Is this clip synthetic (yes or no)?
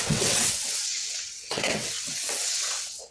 yes